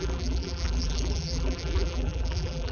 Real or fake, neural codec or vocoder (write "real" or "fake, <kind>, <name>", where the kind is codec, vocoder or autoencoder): fake, vocoder, BigVGAN v2